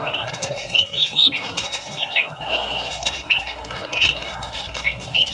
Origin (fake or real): fake